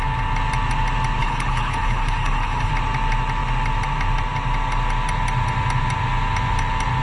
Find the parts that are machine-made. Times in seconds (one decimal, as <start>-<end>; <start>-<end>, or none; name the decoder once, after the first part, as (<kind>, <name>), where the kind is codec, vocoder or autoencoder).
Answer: 1.2-2.7 (codec, HILCodec)